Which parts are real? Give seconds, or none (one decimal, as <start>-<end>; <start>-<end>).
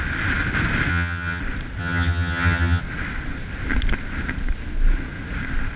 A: 0.0-0.9; 1.4-1.8; 2.8-5.8